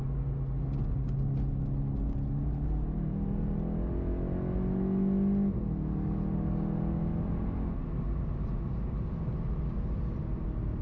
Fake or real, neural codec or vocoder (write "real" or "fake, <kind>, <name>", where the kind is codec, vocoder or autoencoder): real